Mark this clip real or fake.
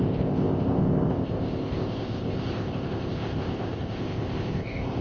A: fake